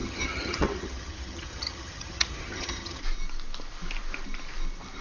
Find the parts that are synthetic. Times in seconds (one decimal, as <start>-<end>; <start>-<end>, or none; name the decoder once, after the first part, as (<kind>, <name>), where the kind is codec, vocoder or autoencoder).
0.0-3.0 (vocoder, HiFi-GAN)

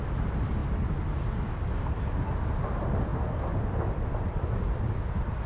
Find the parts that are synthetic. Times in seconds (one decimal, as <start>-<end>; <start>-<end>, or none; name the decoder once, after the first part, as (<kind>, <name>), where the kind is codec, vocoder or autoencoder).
none

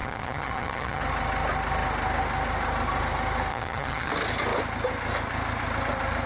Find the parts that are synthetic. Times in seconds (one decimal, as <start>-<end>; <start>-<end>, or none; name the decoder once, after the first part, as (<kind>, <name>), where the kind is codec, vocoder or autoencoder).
0.0-1.0 (vocoder, HiFi-GAN); 3.5-4.1

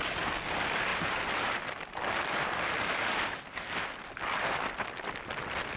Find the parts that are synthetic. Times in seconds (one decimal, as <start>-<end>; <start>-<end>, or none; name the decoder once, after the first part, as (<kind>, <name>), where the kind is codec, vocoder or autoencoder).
none

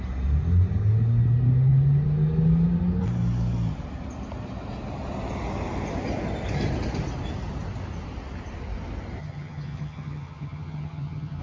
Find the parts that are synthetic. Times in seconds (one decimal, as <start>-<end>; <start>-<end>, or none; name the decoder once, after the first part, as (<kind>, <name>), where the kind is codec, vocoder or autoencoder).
9.2-11.4 (vocoder, HiFi-GAN)